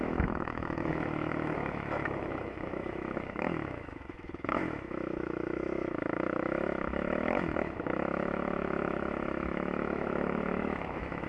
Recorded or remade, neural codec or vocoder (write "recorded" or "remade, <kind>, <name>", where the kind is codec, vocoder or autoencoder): remade, autoencoder, DAC-VAE